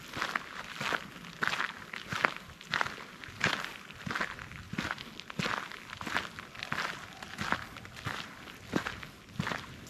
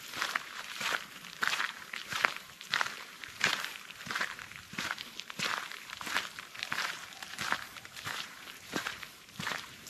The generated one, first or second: second